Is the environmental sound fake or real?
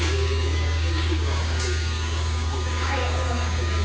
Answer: fake